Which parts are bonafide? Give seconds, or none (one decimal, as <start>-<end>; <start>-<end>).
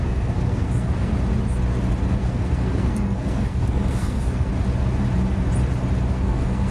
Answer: 1.1-2.1; 4.5-6.1